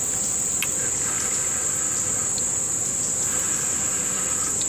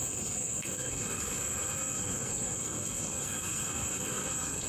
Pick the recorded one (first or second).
first